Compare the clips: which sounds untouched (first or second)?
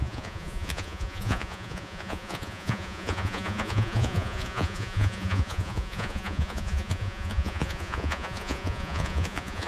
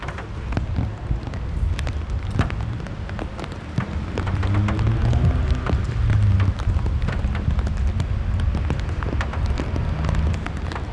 second